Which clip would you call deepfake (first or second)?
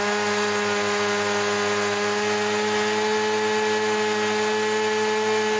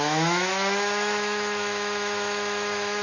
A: second